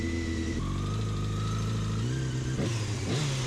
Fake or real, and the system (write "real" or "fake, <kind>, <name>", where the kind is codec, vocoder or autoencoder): real